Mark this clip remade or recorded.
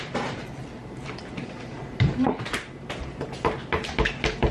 recorded